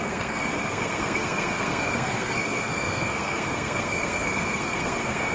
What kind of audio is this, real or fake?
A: fake